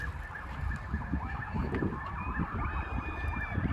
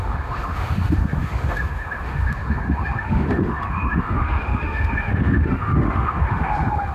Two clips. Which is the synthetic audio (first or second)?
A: second